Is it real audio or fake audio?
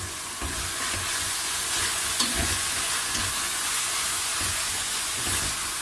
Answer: fake